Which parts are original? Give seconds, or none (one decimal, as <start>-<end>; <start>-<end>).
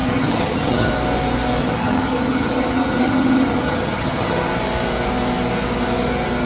0.9-1.6; 4.5-6.5